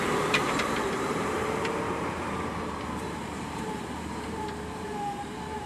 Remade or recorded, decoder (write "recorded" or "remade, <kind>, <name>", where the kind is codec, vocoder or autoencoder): remade, vocoder, BigVGAN v2